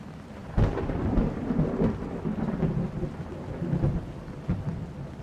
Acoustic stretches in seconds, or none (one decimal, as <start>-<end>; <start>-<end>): 0.0-5.2